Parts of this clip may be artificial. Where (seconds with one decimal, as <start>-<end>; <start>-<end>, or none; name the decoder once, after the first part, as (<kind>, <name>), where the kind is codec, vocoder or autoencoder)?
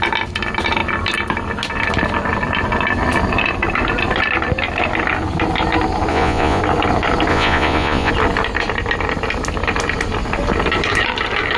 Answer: 6.1-6.6 (vocoder, Vocos); 7.3-8.1